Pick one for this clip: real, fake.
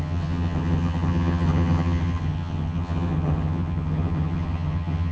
fake